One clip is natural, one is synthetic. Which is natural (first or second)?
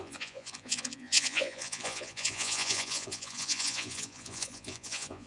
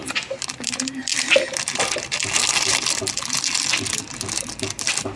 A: second